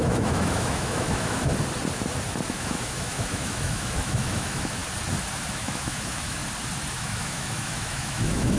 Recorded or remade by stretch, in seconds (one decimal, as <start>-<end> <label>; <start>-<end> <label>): 0.0-1.5 remade; 1.5-2.6 recorded; 2.6-4.8 remade; 4.8-5.5 recorded; 5.5-6.4 remade; 6.4-6.9 recorded; 6.9-8.6 remade